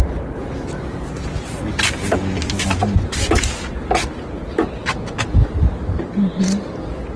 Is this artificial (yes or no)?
no